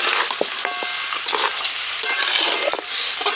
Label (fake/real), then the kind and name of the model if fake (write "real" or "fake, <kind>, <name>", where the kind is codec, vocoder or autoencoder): real